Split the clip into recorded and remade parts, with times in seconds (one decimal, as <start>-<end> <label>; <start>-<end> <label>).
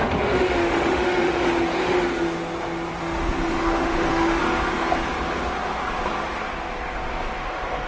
0.0-1.4 remade; 1.4-3.0 recorded; 3.0-4.4 remade; 4.4-7.4 recorded; 7.4-7.9 remade